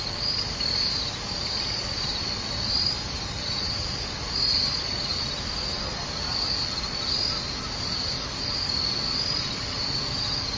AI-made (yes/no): no